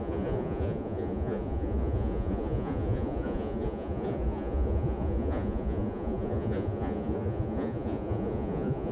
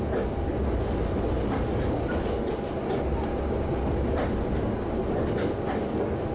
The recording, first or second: second